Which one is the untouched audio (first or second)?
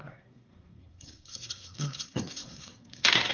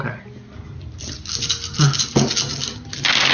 second